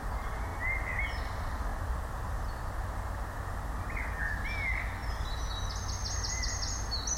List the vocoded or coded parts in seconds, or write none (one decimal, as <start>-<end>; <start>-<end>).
none